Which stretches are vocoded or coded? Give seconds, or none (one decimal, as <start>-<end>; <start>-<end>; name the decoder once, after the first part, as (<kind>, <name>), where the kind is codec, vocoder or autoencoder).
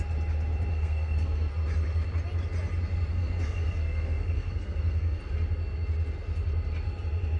0.7-1.5 (codec, SNAC); 3.1-5.2